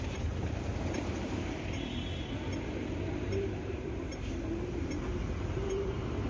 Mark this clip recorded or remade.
remade